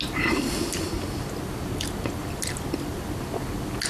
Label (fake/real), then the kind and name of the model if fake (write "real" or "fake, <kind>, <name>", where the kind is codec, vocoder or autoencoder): real